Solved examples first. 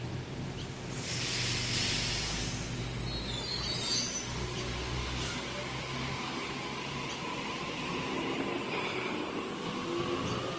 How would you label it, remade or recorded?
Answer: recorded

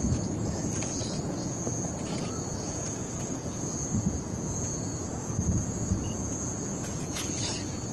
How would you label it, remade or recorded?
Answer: remade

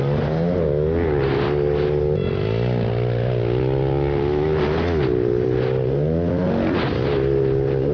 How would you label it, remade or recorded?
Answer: recorded